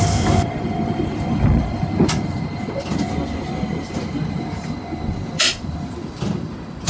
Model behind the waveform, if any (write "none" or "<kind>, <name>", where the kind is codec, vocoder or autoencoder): vocoder, BigVGAN v2